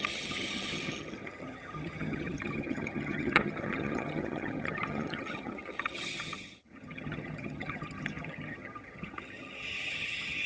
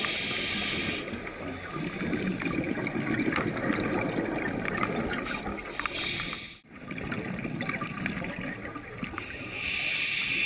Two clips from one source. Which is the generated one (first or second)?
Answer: first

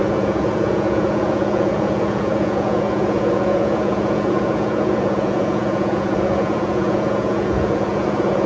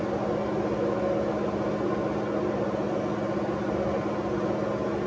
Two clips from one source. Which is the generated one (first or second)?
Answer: first